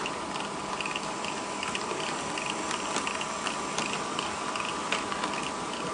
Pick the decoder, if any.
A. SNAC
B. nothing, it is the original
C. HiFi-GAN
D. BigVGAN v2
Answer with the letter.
B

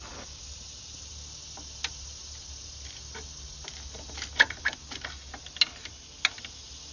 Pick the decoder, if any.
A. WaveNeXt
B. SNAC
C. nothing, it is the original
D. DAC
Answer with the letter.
C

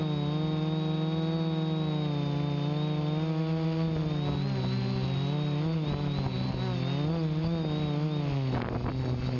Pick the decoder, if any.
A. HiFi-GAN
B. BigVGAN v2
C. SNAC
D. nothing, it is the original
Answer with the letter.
D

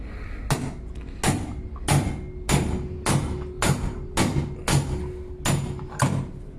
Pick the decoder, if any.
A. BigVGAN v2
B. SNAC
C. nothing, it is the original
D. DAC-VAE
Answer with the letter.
C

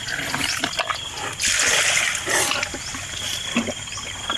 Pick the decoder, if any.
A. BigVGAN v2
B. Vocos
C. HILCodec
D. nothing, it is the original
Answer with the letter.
D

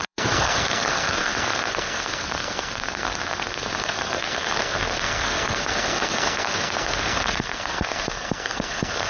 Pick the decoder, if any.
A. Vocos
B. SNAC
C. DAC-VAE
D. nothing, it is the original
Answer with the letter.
B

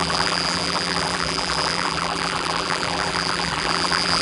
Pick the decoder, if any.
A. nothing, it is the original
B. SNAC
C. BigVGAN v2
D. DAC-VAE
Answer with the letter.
C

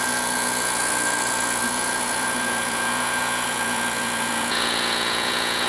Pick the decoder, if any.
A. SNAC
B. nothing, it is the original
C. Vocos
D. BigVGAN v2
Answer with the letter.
C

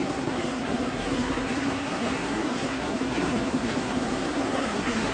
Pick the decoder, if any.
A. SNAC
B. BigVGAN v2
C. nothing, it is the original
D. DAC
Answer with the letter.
A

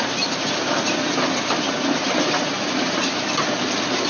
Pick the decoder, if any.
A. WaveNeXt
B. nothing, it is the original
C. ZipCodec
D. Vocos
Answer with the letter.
B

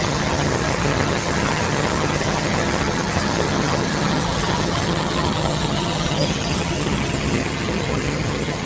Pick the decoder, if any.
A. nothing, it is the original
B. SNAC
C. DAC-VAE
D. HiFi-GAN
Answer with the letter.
D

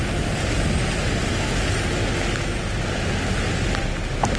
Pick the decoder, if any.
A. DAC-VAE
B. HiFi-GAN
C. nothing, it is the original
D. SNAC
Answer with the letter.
C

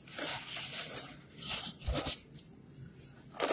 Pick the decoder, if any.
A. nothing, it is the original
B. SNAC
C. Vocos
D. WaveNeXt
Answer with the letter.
A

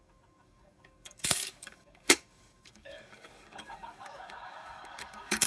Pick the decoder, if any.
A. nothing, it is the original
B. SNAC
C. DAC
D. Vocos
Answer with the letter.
C